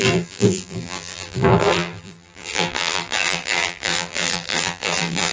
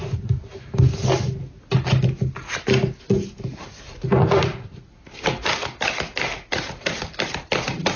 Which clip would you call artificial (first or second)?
first